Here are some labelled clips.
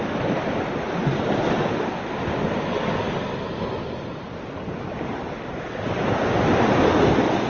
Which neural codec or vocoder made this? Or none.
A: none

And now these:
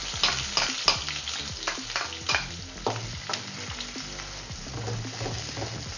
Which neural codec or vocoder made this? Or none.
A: none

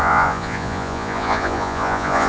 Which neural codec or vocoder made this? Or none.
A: vocoder, Vocos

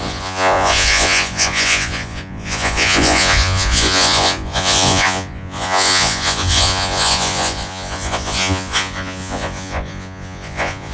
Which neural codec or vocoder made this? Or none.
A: vocoder, Vocos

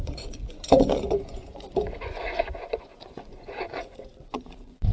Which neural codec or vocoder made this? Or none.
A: vocoder, Vocos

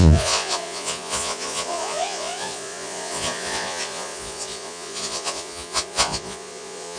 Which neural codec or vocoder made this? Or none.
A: vocoder, Vocos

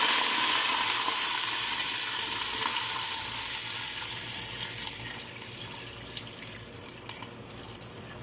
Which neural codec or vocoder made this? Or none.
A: none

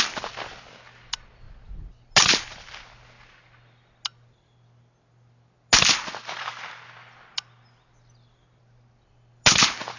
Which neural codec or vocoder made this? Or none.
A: none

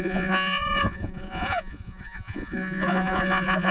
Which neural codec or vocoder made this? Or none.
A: vocoder, Vocos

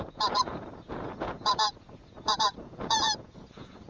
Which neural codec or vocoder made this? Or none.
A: vocoder, Vocos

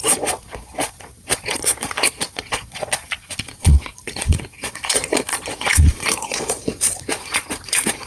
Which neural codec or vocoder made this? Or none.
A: vocoder, Vocos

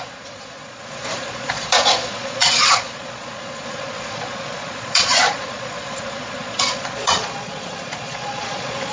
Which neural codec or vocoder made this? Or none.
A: vocoder, Vocos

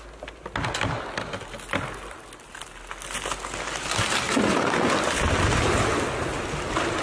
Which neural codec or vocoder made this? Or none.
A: none